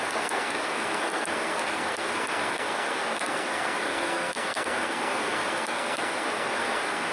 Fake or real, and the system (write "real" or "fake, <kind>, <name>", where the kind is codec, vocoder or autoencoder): fake, codec, SNAC